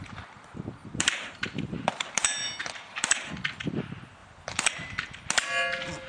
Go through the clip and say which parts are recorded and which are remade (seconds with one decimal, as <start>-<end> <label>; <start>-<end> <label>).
0.0-0.8 recorded; 0.8-3.3 remade; 3.3-4.2 recorded; 4.2-4.7 remade; 4.7-6.1 recorded